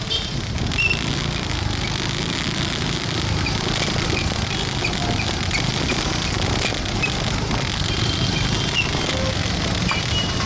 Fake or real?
real